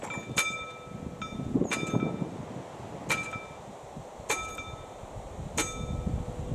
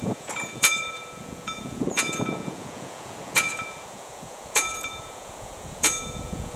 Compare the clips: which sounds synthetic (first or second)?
second